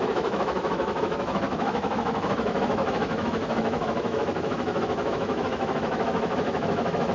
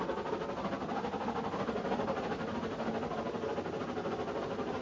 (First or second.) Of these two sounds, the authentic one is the second